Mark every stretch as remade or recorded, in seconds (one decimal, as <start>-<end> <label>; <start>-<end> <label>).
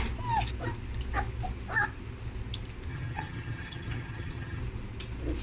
0.0-2.9 recorded; 2.9-4.6 remade; 4.6-5.4 recorded